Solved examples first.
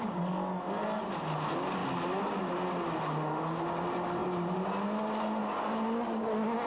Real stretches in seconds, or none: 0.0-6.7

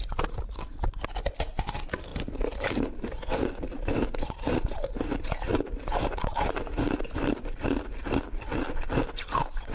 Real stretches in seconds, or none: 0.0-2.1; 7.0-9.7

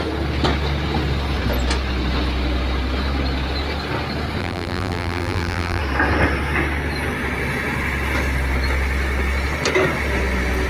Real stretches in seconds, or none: 0.0-4.4; 5.8-10.7

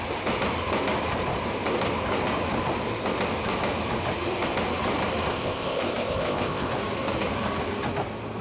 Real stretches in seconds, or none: 0.0-5.3; 6.7-8.4

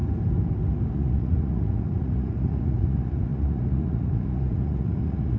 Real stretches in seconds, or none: 0.0-0.9

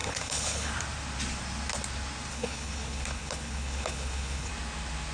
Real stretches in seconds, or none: 0.7-2.3; 4.5-5.1